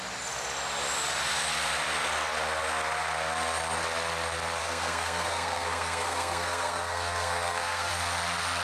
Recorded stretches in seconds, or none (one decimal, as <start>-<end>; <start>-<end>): 0.0-4.6; 7.9-8.6